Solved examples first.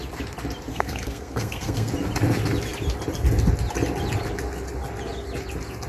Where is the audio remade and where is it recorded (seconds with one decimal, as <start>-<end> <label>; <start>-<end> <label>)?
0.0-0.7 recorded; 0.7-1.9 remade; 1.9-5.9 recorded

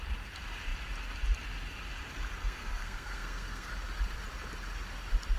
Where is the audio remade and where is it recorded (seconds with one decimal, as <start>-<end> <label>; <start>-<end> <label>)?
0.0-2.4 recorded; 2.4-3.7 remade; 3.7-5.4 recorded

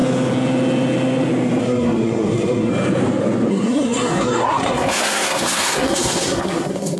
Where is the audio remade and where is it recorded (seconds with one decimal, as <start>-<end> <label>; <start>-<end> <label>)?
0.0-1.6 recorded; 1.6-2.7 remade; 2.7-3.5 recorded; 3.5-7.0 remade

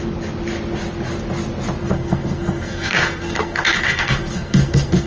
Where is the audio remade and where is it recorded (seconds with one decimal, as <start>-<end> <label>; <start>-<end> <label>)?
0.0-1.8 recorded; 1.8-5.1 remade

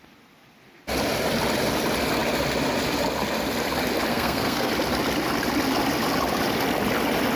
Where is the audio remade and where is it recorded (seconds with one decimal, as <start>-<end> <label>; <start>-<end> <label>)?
0.0-4.1 recorded; 4.1-4.7 remade; 4.7-7.4 recorded